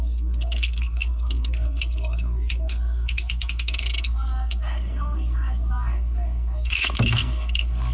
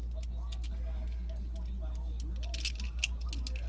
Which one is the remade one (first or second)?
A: first